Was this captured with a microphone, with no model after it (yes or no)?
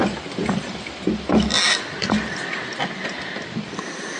yes